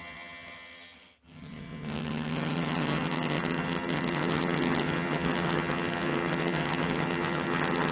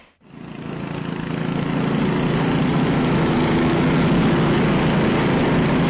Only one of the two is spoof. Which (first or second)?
first